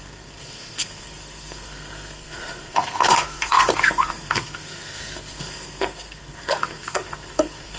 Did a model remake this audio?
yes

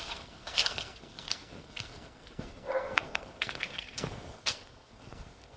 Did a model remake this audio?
yes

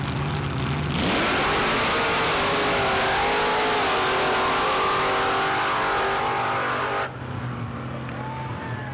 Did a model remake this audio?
no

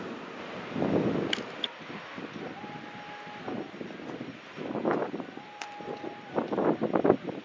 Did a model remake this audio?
no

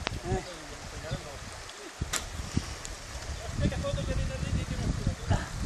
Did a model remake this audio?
no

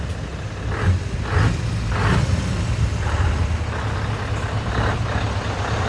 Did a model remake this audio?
no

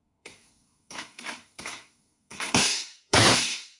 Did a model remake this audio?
yes